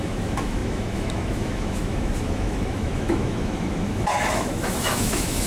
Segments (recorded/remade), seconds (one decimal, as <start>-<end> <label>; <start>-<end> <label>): 0.0-5.5 remade